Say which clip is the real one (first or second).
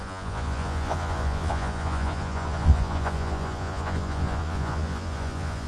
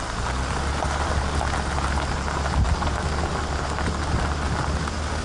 second